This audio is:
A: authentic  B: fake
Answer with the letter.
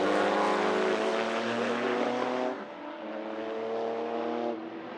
A